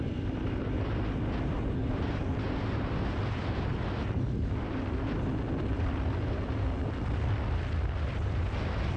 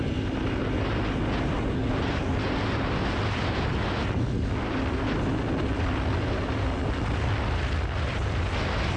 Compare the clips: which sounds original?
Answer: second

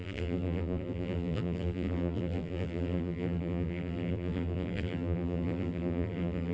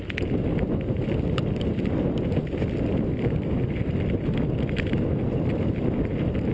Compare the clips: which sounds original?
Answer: second